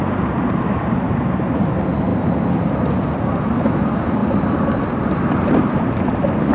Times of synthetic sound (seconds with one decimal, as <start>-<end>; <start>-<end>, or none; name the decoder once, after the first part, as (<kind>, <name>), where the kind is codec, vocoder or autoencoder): 0.0-2.1 (vocoder, BigVGAN v2); 3.8-6.5